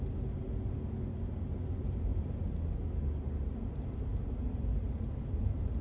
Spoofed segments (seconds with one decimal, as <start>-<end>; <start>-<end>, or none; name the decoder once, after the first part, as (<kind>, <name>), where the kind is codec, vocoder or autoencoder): none